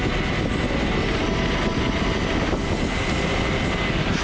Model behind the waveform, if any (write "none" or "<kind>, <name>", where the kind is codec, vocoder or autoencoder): none